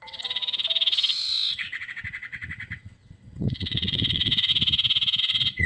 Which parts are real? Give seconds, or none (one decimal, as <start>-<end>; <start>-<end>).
0.4-1.5; 4.5-5.2